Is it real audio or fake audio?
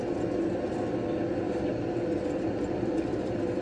real